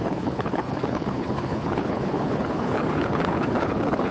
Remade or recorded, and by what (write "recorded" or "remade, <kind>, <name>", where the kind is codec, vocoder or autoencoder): remade, codec, HILCodec